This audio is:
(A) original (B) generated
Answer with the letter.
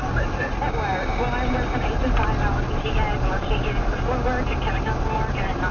A